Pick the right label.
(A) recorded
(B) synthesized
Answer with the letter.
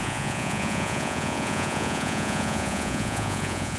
B